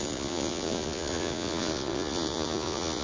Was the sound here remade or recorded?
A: remade